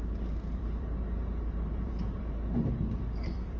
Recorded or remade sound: remade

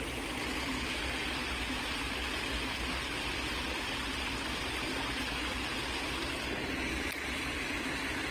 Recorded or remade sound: recorded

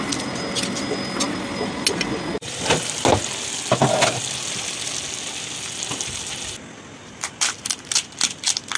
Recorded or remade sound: recorded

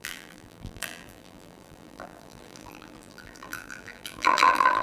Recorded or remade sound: remade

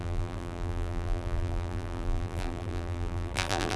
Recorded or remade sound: remade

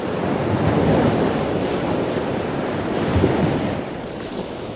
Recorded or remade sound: remade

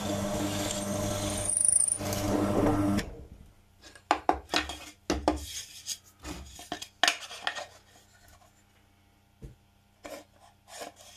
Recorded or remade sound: recorded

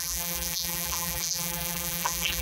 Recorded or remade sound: remade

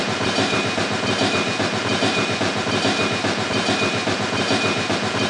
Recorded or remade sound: remade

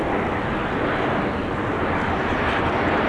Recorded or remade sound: recorded